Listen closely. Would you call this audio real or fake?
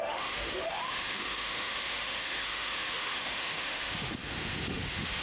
fake